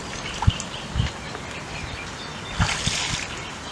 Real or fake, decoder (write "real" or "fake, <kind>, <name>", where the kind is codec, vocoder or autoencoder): real